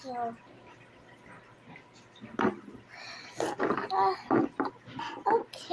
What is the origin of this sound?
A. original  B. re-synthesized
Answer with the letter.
A